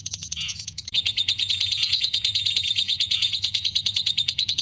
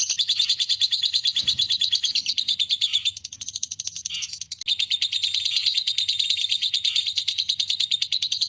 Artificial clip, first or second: first